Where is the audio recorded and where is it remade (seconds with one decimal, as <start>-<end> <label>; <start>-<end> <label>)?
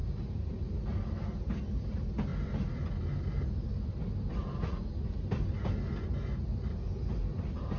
0.0-0.8 remade; 0.8-7.8 recorded